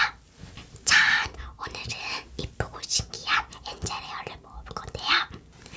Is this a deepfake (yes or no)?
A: no